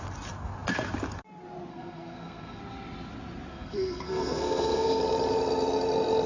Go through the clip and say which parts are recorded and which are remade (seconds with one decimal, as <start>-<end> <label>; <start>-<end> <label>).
0.0-1.7 recorded; 1.7-2.6 remade; 2.6-3.5 recorded; 3.5-5.0 remade; 5.0-6.3 recorded